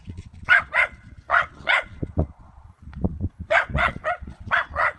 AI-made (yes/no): yes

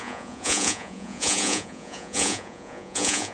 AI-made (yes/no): yes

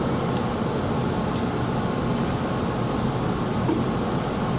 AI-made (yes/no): no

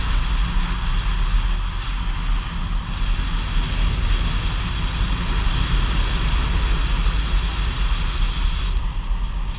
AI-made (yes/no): no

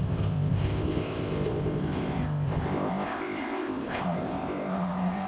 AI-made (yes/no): yes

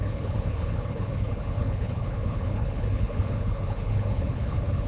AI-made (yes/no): yes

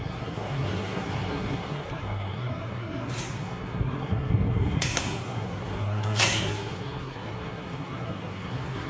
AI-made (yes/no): yes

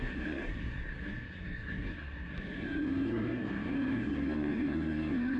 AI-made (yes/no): yes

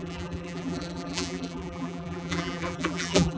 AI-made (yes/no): yes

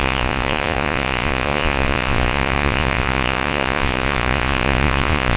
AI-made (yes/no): yes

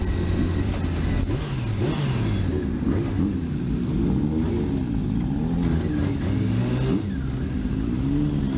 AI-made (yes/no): no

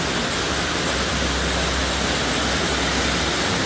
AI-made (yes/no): no